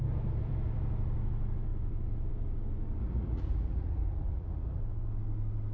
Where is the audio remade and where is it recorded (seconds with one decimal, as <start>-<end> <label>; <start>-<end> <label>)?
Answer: 0.0-3.0 recorded; 3.0-4.8 remade; 4.8-5.7 recorded